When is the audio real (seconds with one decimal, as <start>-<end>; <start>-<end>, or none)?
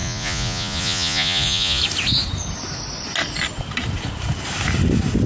1.8-5.3